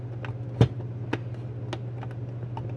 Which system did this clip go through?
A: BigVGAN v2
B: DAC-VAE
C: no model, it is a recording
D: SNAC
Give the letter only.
C